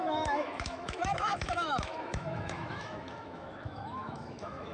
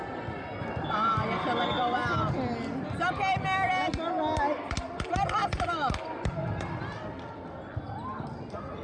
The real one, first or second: second